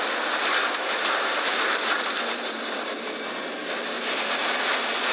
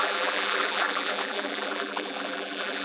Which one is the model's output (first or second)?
second